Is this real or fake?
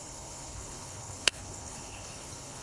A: fake